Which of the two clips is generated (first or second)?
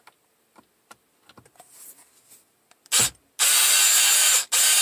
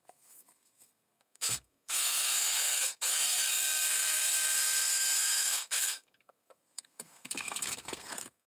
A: second